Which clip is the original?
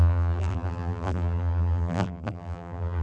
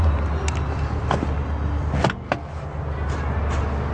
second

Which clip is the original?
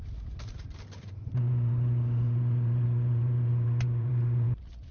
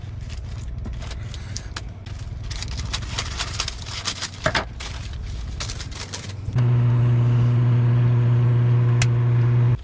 second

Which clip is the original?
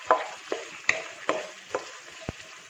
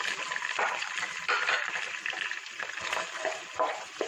first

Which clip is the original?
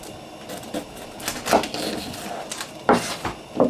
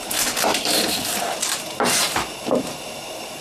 first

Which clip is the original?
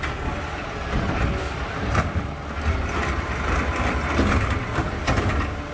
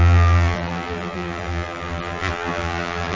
first